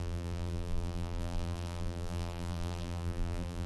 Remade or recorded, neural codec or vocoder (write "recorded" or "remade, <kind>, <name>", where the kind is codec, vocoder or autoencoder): remade, vocoder, BigVGAN v2